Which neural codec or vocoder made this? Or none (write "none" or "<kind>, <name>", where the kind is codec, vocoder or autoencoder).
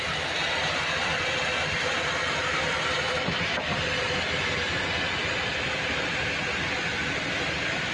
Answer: none